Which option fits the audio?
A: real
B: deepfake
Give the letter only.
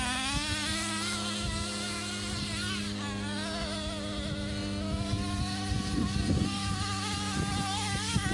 A